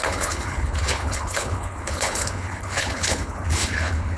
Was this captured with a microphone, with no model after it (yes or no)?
no